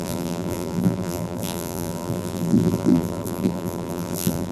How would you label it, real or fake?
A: fake